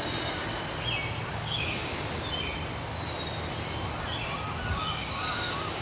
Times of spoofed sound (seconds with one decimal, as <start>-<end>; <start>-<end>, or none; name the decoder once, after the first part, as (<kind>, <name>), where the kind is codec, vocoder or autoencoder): 1.3-1.9 (codec, DAC); 4.7-5.8